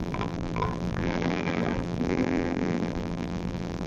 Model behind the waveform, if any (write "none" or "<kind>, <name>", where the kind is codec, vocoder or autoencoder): vocoder, BigVGAN v2